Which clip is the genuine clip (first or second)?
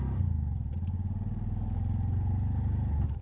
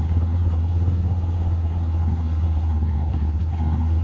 first